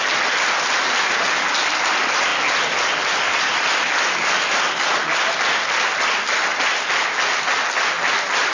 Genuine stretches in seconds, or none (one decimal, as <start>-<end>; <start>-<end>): 0.0-8.5